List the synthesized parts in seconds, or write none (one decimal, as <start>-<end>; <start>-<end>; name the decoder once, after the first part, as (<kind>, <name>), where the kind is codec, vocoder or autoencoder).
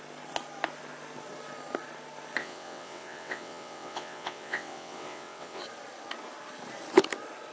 2.4-5.6 (vocoder, WaveNeXt)